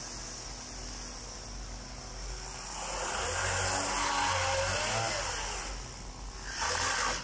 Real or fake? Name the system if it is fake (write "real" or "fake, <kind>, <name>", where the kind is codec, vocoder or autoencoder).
real